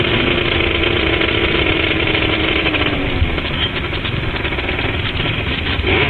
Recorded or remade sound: remade